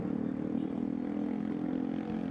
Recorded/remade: recorded